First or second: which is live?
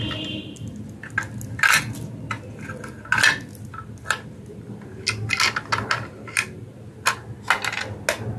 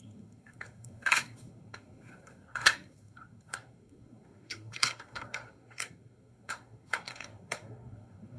first